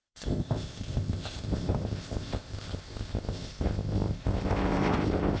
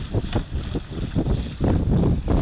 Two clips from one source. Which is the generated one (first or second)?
first